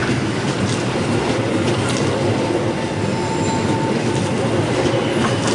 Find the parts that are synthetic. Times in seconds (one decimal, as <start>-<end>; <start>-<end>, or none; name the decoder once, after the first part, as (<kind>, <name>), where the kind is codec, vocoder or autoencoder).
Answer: 0.0-0.6 (codec, DAC)